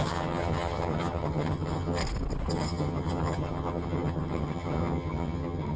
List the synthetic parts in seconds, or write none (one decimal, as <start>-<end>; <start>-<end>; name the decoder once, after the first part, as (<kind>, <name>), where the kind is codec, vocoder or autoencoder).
0.0-2.0 (vocoder, HiFi-GAN); 2.5-5.8